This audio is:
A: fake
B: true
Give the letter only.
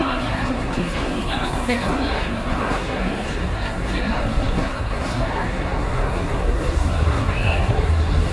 A